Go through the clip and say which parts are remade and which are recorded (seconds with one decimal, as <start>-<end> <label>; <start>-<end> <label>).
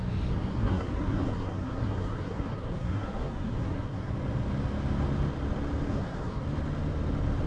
0.0-0.5 recorded; 0.5-4.1 remade; 4.1-5.9 recorded; 5.9-6.4 remade; 6.4-7.5 recorded